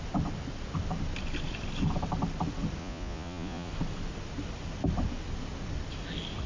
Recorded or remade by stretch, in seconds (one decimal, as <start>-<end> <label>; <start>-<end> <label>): 0.0-2.8 recorded; 2.8-3.7 remade; 3.7-6.5 recorded